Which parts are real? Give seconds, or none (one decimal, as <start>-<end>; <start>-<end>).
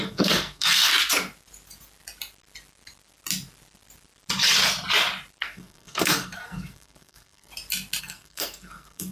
0.9-5.4; 7.5-8.0